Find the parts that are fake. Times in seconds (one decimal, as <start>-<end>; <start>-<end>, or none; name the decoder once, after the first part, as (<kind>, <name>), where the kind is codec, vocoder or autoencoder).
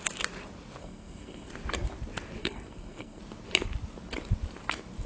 0.8-1.5 (codec, SNAC); 2.4-3.2